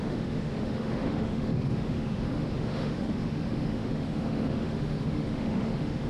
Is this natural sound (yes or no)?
no